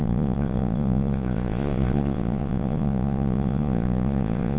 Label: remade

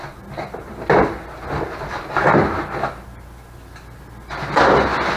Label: recorded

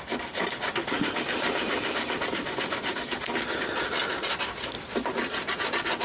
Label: recorded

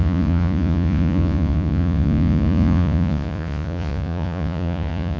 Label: remade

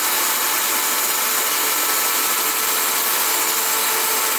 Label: recorded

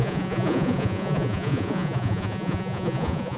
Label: remade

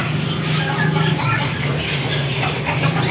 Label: recorded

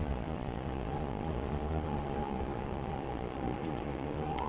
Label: remade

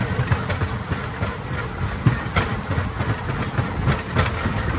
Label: recorded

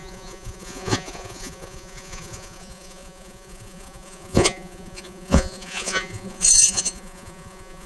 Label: remade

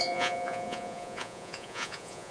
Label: remade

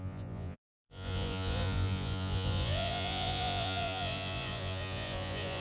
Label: remade